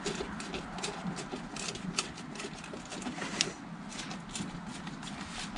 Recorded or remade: recorded